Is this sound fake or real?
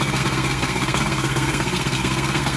fake